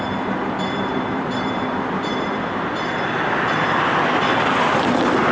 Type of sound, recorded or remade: remade